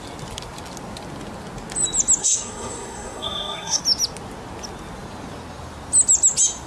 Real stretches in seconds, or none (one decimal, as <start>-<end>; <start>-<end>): 0.0-2.2; 3.8-6.7